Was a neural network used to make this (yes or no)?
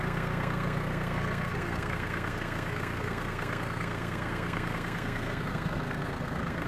yes